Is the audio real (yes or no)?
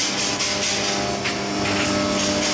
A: yes